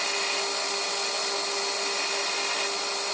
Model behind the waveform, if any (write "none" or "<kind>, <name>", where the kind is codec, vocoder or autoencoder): none